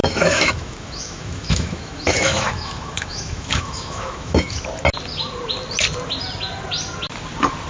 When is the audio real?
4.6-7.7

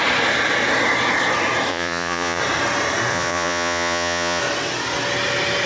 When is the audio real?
0.0-1.7; 2.4-3.1; 4.4-5.7